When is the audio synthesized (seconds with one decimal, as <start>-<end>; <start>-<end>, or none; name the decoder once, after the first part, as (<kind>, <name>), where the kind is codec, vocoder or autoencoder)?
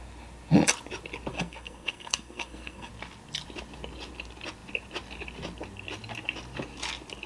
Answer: 1.3-2.9 (codec, SNAC)